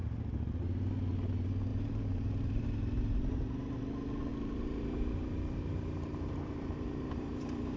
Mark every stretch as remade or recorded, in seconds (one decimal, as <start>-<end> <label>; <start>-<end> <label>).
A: 0.0-0.6 remade; 0.6-1.7 recorded; 1.7-3.4 remade; 3.4-4.3 recorded; 4.3-7.8 remade